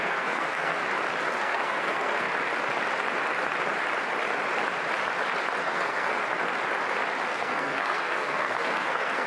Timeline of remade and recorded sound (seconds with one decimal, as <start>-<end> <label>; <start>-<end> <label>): 0.0-0.8 remade; 0.8-1.4 recorded; 1.4-2.3 remade; 2.3-5.6 recorded; 5.6-6.2 remade; 6.2-7.3 recorded; 7.3-9.3 remade